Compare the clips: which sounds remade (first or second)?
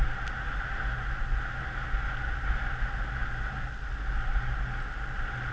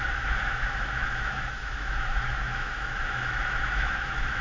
second